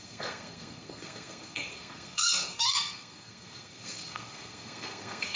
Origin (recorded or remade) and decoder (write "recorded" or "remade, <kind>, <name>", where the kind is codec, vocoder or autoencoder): remade, codec, SNAC